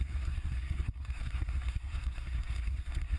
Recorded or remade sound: remade